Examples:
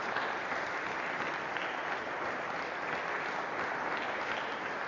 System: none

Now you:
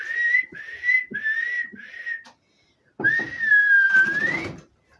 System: none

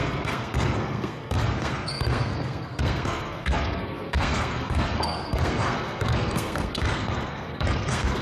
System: codec, SNAC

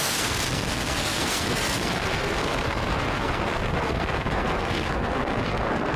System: codec, SNAC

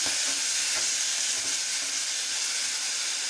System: none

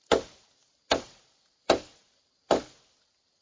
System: none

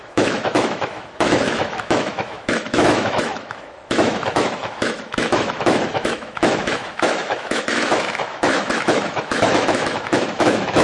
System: autoencoder, DAC-VAE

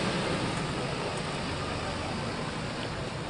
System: none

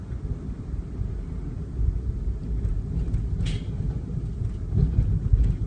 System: none